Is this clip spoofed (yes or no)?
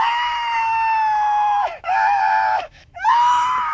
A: yes